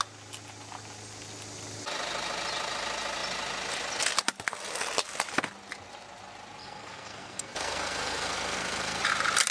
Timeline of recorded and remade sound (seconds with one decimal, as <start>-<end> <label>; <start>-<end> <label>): 0.0-6.6 recorded; 6.6-9.0 remade; 9.0-9.5 recorded